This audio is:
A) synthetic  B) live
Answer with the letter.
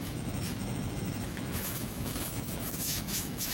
A